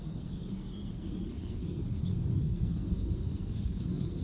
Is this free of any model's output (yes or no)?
no